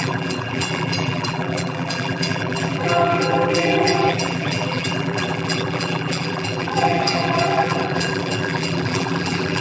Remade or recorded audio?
remade